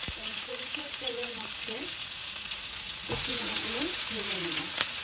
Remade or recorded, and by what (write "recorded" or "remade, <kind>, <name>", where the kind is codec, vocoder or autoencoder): remade, vocoder, Vocos